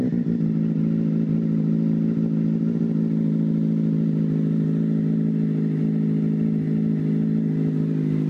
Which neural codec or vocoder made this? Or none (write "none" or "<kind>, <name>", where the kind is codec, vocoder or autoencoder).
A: none